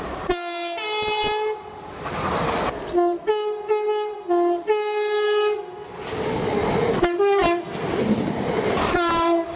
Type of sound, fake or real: real